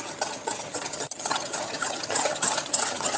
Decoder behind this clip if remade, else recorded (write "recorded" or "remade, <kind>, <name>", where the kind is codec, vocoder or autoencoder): remade, vocoder, HiFi-GAN